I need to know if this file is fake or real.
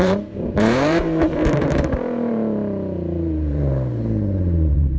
fake